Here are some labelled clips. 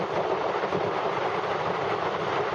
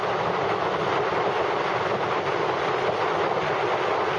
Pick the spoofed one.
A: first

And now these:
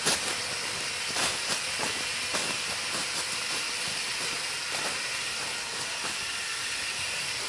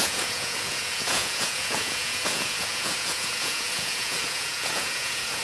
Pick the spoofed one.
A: second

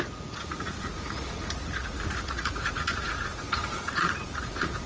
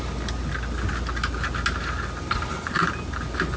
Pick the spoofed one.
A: first